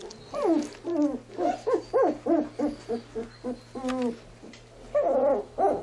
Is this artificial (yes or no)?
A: no